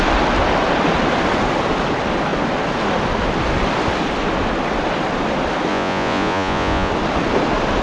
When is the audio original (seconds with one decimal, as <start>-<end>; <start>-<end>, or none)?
0.0-5.7; 6.9-7.8